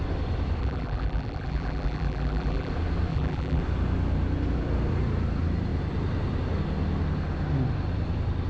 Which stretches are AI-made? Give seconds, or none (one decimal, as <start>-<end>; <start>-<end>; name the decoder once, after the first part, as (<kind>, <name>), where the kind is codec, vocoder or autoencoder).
0.6-2.7 (vocoder, BigVGAN v2); 3.1-3.6